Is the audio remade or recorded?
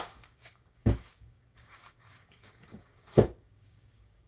remade